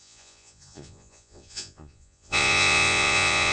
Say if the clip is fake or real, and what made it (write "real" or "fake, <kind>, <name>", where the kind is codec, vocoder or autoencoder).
fake, vocoder, Vocos